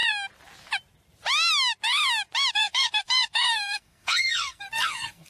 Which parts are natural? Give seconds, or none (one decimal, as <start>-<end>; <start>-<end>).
0.0-2.5